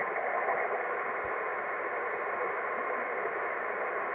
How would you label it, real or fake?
real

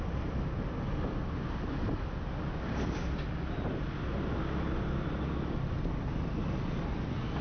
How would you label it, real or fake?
real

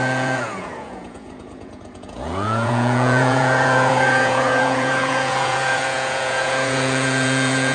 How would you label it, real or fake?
fake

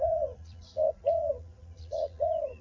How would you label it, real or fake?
fake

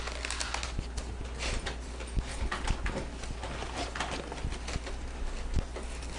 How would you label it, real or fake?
real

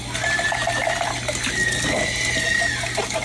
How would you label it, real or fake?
real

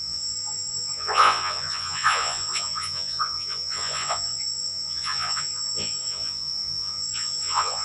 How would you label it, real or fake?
fake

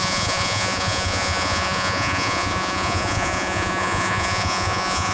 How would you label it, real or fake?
fake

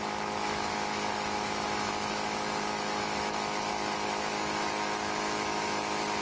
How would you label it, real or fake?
fake